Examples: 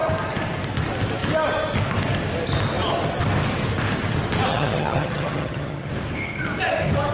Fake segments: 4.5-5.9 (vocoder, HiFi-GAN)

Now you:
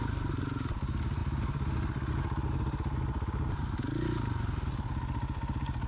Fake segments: none

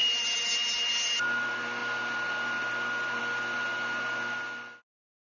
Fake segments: none

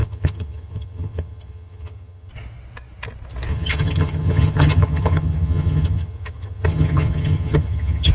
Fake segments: 0.0-2.3 (vocoder, HiFi-GAN); 3.5-8.1

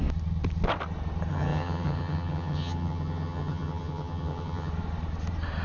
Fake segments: 1.3-4.7 (vocoder, HiFi-GAN)

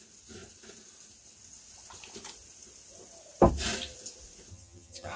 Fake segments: 4.5-5.2 (vocoder, HiFi-GAN)

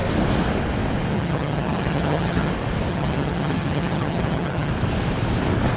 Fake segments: 1.1-2.5 (vocoder, HiFi-GAN); 2.9-4.7